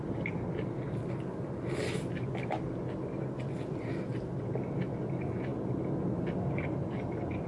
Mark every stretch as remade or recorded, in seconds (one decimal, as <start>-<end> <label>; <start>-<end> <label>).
0.0-7.5 recorded

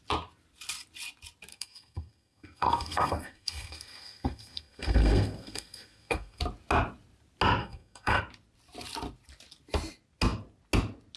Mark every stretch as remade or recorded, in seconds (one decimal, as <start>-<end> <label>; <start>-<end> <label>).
0.0-1.5 recorded; 1.5-6.4 remade; 6.4-7.6 recorded; 7.6-8.2 remade; 8.2-11.2 recorded

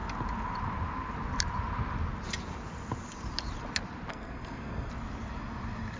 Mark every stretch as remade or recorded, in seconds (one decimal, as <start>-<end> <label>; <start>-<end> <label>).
0.0-4.1 recorded; 4.1-4.9 remade; 4.9-6.0 recorded

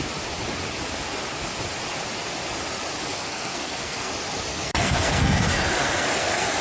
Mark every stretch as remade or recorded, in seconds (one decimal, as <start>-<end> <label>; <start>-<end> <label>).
0.0-3.1 recorded; 3.1-4.1 remade; 4.1-4.5 recorded; 4.5-6.6 remade